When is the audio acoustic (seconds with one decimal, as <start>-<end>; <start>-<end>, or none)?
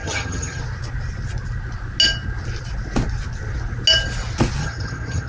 0.6-4.6